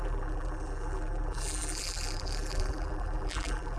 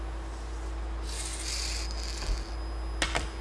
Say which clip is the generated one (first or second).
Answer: first